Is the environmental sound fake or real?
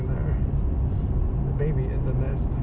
real